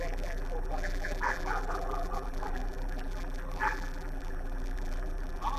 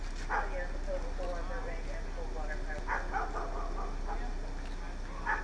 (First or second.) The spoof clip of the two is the first